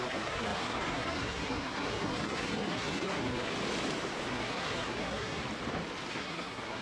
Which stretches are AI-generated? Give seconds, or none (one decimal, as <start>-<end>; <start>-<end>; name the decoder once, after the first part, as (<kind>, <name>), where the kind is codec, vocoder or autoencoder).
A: 0.0-3.5 (codec, SNAC); 4.3-5.4; 6.1-6.8